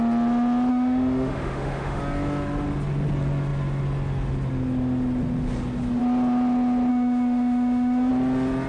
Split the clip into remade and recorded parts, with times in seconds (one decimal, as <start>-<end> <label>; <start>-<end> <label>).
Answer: 0.0-0.7 recorded; 0.7-2.0 remade; 2.0-6.9 recorded; 6.9-8.1 remade; 8.1-8.7 recorded

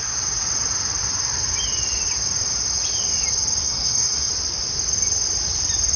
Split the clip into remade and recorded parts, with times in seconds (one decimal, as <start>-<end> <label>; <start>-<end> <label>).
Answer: 0.0-3.6 recorded; 3.6-4.3 remade; 4.3-6.0 recorded

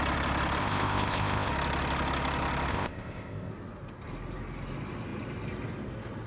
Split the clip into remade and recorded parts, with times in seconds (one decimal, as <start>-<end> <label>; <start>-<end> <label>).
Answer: 0.0-0.6 recorded; 0.6-1.5 remade; 1.5-2.7 recorded; 2.7-3.5 remade; 3.5-6.3 recorded

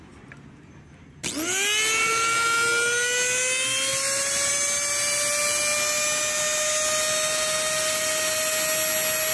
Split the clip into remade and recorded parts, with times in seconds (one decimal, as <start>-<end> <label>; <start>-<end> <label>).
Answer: 0.0-3.9 recorded; 3.9-4.5 remade; 4.5-9.3 recorded

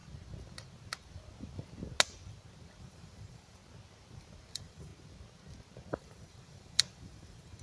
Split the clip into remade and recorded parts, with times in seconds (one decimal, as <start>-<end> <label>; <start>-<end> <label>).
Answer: 0.0-2.8 recorded; 2.8-3.6 remade; 3.6-4.5 recorded; 4.5-4.9 remade; 4.9-5.9 recorded; 5.9-7.6 remade

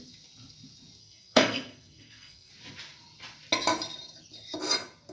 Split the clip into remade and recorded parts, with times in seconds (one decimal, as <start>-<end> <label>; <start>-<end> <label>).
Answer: 0.0-1.0 recorded; 1.0-2.5 remade; 2.5-5.1 recorded

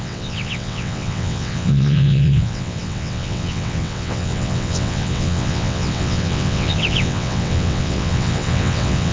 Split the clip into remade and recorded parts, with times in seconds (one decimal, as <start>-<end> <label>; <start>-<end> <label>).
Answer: 0.0-9.1 remade

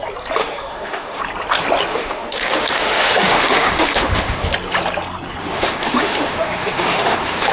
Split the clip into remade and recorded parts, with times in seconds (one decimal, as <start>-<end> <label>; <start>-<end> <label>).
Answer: 0.0-0.4 recorded; 0.4-1.2 remade; 1.2-1.9 recorded; 1.9-4.5 remade; 4.5-5.4 recorded; 5.4-7.5 remade